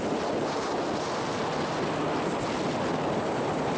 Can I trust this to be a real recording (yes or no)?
yes